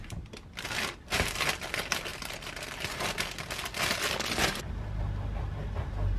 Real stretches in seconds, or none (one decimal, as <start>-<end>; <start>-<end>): 0.0-6.2